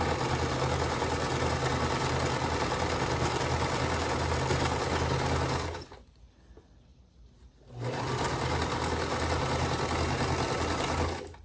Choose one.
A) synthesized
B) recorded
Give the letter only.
B